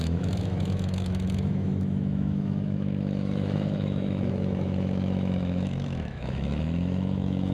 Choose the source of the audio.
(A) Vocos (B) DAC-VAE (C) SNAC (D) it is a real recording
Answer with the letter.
B